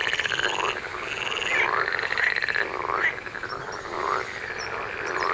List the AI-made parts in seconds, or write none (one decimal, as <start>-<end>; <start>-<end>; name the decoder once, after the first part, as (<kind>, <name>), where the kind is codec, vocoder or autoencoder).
none